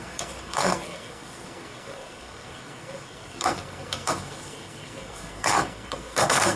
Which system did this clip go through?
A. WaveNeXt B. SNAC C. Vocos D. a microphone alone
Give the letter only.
B